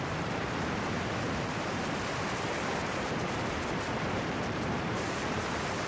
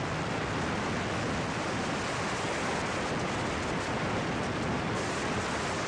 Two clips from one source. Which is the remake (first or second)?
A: first